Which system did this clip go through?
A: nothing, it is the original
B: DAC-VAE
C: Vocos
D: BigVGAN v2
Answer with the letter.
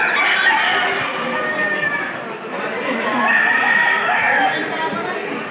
A